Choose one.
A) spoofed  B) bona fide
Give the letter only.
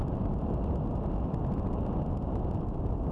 B